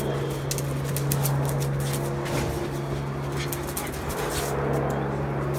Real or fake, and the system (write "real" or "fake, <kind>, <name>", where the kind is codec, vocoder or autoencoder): real